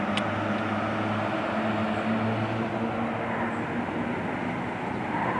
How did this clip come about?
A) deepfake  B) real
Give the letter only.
B